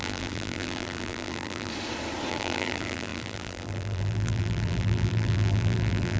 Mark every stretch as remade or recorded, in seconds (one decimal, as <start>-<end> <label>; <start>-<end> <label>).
0.0-1.7 remade; 1.7-2.3 recorded; 2.3-6.2 remade